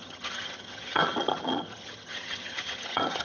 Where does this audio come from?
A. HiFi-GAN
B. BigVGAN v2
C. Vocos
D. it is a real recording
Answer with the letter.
A